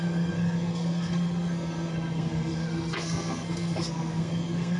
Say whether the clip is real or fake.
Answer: fake